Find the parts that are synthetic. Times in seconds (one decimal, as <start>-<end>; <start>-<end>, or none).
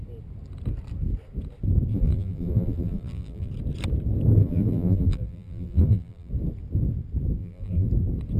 1.9-3.5; 4.4-6.3; 7.4-7.9